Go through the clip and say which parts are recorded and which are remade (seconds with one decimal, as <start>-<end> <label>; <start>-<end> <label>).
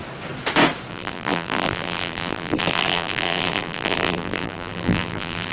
0.0-0.9 recorded; 0.9-5.5 remade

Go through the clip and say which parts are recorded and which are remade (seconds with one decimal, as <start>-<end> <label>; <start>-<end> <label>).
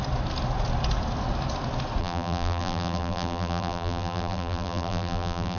0.0-2.0 recorded; 2.0-5.6 remade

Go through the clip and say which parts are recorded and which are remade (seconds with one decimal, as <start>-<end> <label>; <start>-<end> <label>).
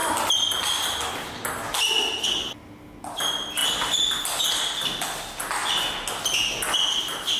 0.0-7.4 recorded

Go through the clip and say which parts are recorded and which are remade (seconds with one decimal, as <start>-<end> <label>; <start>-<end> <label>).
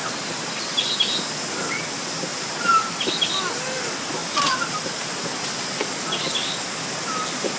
0.0-0.5 remade; 0.5-2.3 recorded; 2.3-3.1 remade; 3.1-4.2 recorded; 4.2-5.3 remade; 5.3-7.6 recorded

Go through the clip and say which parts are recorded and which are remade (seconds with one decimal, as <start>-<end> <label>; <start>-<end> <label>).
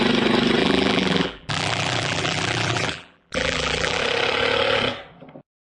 0.0-0.6 recorded; 0.6-4.0 remade; 4.0-5.6 recorded